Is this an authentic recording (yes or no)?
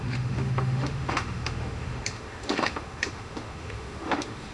no